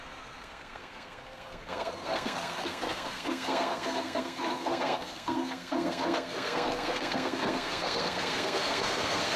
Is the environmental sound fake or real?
fake